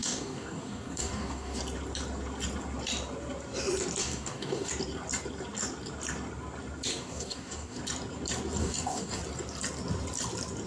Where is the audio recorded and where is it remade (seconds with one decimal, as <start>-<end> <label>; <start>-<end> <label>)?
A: 0.0-1.6 remade; 1.6-4.0 recorded; 4.0-4.7 remade; 4.7-6.9 recorded; 6.9-7.8 remade; 7.8-8.6 recorded; 8.6-9.2 remade; 9.2-10.7 recorded